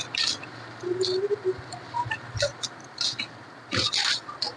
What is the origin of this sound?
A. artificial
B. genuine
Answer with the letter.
A